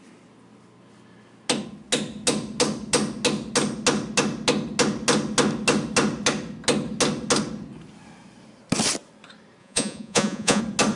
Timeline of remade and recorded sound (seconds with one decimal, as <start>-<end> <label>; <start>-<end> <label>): 0.0-9.6 recorded; 9.6-10.6 remade; 10.6-11.0 recorded